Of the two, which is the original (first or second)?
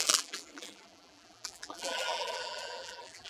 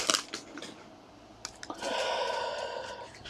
second